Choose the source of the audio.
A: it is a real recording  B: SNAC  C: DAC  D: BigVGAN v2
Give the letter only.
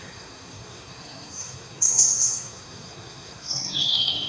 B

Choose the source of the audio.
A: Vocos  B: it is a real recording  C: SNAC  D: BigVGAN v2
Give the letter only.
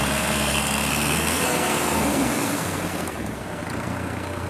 C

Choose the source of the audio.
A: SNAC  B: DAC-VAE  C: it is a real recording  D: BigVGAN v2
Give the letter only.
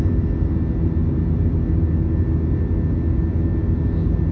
C